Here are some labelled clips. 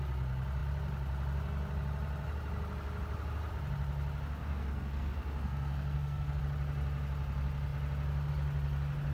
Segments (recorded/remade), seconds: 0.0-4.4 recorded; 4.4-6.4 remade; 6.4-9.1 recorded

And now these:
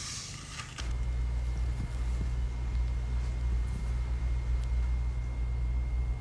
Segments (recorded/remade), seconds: 0.0-6.2 recorded

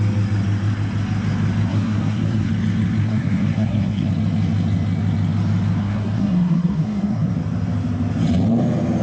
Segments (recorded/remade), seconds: 0.0-1.7 recorded; 1.7-2.5 remade; 2.5-3.0 recorded; 3.0-4.1 remade; 4.1-5.8 recorded; 5.8-7.3 remade; 7.3-9.0 recorded

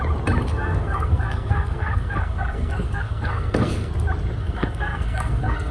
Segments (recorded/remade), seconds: 0.0-0.5 recorded; 0.5-3.9 remade; 3.9-4.4 recorded; 4.4-5.7 remade

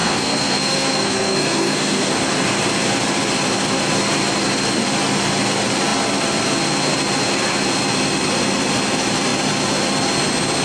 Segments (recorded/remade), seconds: 0.0-2.1 remade; 2.1-10.6 recorded

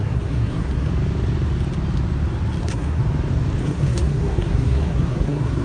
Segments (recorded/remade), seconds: 0.0-0.9 remade; 0.9-2.6 recorded; 2.6-3.0 remade; 3.0-3.6 recorded; 3.6-5.6 remade